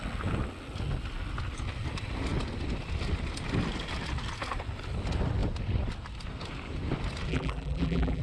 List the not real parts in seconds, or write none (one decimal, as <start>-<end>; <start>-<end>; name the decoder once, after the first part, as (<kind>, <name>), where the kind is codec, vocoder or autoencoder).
7.3-8.2 (vocoder, BigVGAN v2)